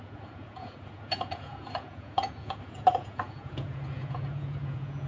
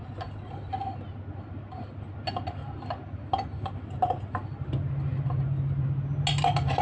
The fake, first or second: first